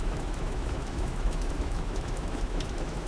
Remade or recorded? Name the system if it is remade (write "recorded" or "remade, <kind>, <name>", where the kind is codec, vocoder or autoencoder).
remade, autoencoder, DAC-VAE